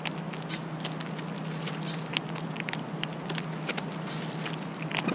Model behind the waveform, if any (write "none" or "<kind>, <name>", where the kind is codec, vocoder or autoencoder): none